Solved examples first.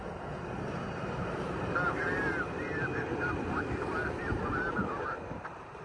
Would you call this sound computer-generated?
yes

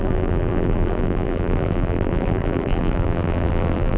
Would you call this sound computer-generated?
yes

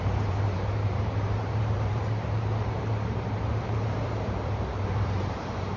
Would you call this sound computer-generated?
yes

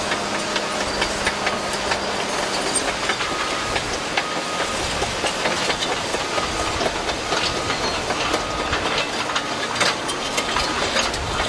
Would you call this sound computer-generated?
no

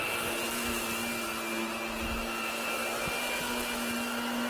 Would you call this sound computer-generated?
no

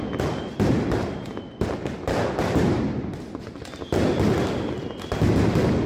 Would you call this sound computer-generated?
no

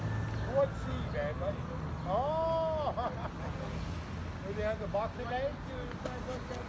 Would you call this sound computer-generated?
no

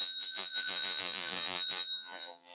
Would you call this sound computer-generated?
yes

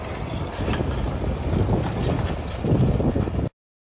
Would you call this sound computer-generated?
no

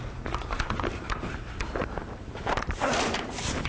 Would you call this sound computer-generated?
yes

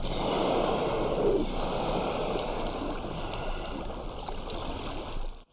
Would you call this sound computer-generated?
no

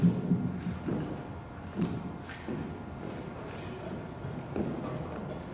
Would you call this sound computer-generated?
no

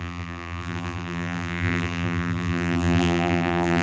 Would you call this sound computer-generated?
yes